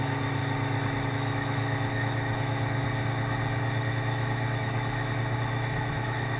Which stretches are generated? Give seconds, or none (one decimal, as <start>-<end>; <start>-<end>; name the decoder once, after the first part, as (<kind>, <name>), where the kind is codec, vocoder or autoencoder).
0.0-0.4 (autoencoder, DAC-VAE); 1.1-2.8; 3.9-6.4